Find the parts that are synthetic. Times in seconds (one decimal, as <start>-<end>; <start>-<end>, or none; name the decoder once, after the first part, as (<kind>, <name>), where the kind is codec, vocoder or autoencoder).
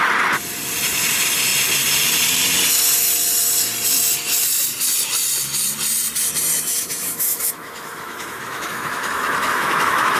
6.7-10.2 (autoencoder, DAC-VAE)